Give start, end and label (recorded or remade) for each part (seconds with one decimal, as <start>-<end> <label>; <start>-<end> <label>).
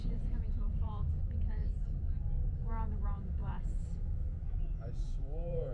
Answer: 0.0-5.7 remade